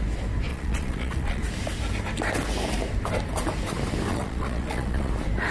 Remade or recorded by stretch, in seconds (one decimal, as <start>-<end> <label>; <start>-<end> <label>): 0.0-0.5 recorded; 0.5-1.4 remade; 1.4-4.1 recorded; 4.1-5.1 remade; 5.1-5.5 recorded